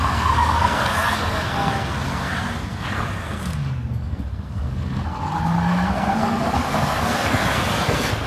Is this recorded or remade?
remade